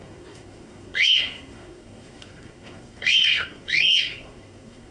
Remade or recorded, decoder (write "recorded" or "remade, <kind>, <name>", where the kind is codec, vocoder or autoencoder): remade, codec, SNAC